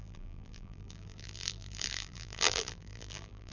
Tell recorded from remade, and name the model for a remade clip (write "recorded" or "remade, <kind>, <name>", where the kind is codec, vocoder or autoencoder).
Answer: remade, vocoder, BigVGAN v2